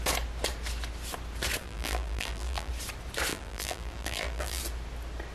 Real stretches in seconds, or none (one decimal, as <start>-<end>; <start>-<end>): 0.0-1.6; 2.7-3.3; 4.6-5.3